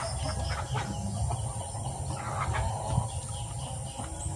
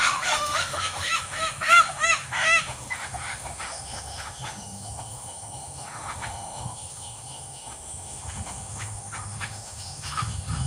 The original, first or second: first